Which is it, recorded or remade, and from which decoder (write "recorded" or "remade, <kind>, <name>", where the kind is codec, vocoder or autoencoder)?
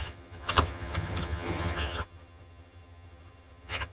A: remade, vocoder, HiFi-GAN